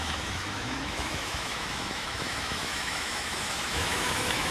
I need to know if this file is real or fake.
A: fake